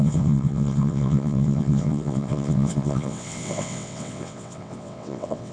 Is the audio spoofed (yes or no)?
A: yes